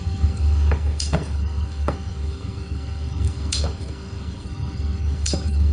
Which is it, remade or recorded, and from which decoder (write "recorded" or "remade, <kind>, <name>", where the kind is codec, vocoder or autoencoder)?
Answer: remade, codec, SNAC